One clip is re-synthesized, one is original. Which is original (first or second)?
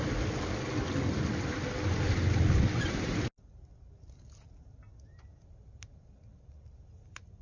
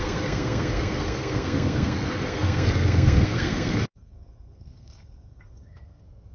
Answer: first